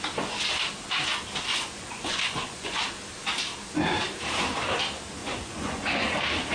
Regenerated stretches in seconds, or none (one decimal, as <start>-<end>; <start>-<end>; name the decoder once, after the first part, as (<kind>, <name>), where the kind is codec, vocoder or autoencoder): 1.5-2.8 (vocoder, Vocos); 5.2-6.1